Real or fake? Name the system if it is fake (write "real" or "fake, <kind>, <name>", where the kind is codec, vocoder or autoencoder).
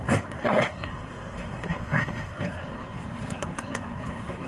fake, codec, SNAC